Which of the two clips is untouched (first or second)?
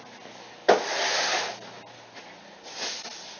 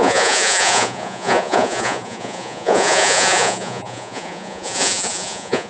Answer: first